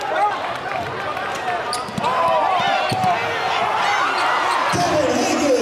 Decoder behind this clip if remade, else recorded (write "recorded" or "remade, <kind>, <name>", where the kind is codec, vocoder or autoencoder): recorded